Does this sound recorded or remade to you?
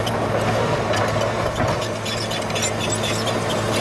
recorded